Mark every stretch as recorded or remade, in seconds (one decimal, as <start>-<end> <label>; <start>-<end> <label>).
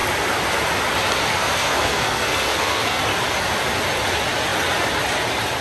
0.0-1.3 recorded; 1.3-3.0 remade; 3.0-5.6 recorded